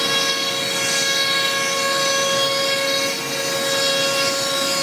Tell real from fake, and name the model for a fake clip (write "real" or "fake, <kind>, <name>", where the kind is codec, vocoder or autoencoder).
real